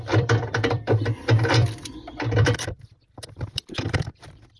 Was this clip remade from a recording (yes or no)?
yes